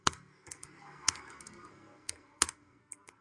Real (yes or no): no